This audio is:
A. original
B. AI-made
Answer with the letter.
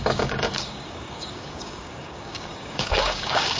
B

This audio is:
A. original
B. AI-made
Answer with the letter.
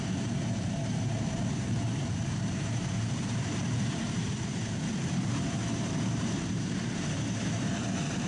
B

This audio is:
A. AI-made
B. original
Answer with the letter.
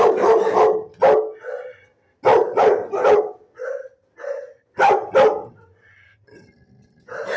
B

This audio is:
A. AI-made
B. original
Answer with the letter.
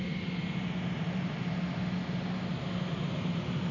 B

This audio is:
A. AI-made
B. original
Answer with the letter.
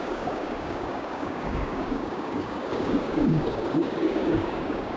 A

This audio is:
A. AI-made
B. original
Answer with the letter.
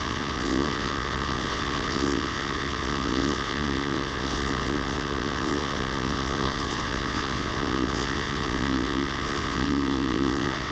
A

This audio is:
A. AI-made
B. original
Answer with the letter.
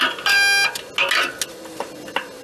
B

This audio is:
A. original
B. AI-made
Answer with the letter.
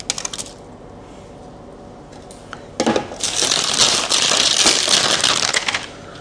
A